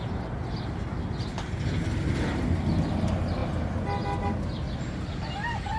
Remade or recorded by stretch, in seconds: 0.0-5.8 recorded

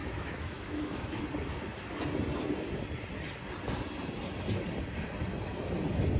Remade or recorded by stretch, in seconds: 0.0-1.2 remade; 1.2-6.2 recorded